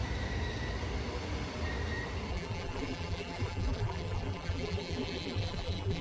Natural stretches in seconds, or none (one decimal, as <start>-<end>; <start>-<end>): 0.0-2.3